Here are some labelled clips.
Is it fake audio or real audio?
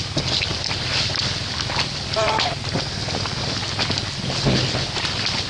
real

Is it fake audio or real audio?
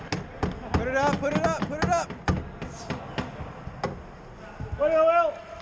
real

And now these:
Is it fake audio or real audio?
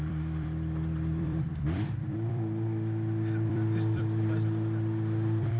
fake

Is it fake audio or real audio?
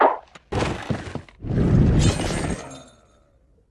real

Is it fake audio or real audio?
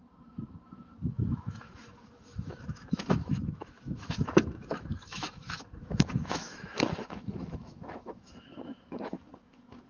fake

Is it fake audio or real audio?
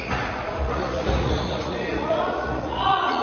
fake